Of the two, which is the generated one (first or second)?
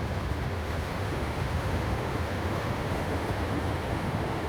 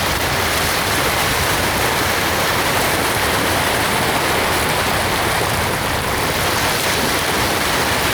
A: first